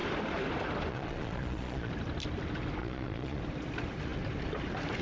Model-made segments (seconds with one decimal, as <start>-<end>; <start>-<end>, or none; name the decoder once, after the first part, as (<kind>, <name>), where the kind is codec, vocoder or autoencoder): 0.9-1.9 (vocoder, Vocos); 2.8-3.4